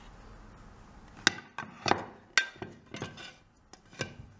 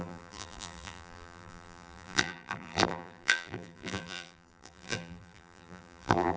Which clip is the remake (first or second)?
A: second